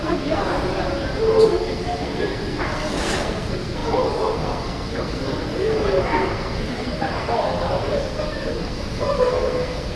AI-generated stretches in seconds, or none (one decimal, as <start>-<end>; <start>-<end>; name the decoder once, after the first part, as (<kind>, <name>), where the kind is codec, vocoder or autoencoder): 0.0-0.5 (codec, SNAC); 1.4-9.9